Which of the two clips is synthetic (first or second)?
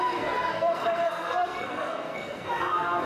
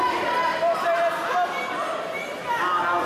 first